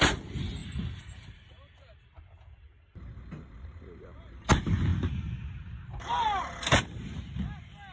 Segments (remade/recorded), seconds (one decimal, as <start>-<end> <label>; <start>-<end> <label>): 0.0-0.6 recorded; 0.6-2.1 remade; 2.1-7.9 recorded